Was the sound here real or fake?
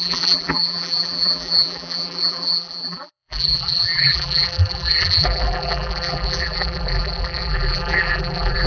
fake